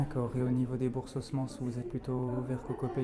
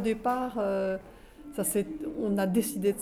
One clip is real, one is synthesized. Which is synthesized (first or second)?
first